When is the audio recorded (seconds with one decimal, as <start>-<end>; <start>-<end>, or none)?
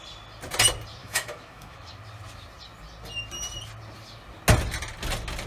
0.0-1.0; 1.9-5.5